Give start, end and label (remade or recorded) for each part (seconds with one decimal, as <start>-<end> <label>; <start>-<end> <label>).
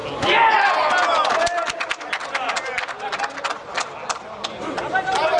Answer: 0.0-5.4 recorded